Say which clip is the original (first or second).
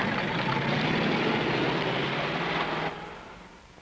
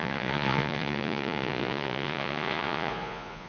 first